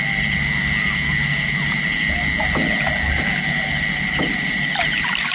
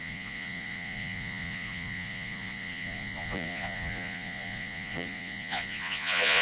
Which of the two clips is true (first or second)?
first